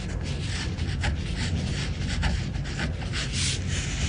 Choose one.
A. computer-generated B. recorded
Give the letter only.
B